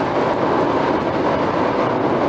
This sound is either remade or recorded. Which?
recorded